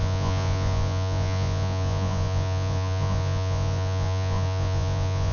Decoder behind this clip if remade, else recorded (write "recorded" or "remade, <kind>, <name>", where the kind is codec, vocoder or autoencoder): remade, vocoder, Vocos